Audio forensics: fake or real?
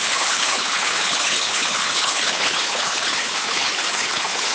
fake